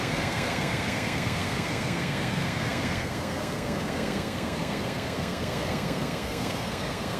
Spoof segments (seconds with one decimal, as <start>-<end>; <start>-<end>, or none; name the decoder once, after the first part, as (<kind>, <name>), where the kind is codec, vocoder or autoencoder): 0.0-7.2 (codec, SNAC)